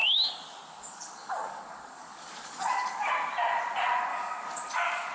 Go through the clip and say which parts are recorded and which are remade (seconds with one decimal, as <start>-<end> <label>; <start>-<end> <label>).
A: 0.0-3.1 remade; 3.1-4.1 recorded; 4.1-5.1 remade

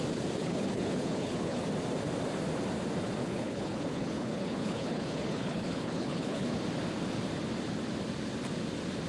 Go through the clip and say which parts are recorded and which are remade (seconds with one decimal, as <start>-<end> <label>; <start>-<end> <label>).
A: 0.0-0.4 recorded; 0.4-1.6 remade; 1.6-3.2 recorded; 3.2-6.6 remade; 6.6-9.1 recorded

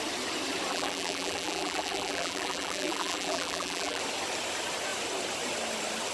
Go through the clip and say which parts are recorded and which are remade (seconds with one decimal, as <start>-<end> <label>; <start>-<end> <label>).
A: 0.0-0.7 recorded; 0.7-4.0 remade; 4.0-6.1 recorded

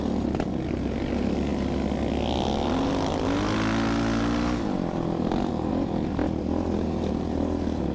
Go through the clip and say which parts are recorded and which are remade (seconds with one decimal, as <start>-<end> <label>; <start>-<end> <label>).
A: 0.0-7.9 recorded

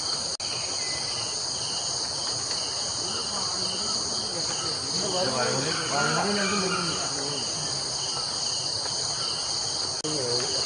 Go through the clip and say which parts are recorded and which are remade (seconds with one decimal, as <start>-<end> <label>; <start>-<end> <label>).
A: 0.0-10.7 recorded

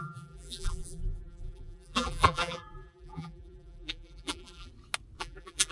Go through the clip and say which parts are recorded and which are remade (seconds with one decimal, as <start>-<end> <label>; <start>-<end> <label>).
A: 0.0-4.7 remade; 4.7-5.2 recorded; 5.2-5.7 remade

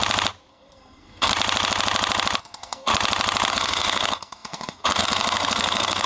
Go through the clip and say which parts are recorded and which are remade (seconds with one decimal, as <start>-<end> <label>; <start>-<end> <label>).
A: 0.0-0.5 recorded; 0.5-1.3 remade; 1.3-2.4 recorded; 2.4-2.9 remade; 2.9-3.5 recorded; 3.5-6.1 remade

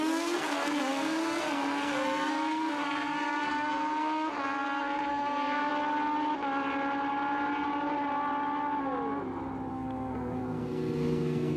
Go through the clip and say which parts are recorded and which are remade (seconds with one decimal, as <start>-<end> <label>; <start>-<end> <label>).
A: 0.0-5.7 remade; 5.7-9.7 recorded; 9.7-11.6 remade